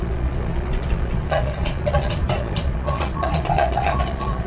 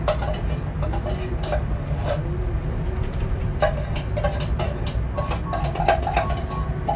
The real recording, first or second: second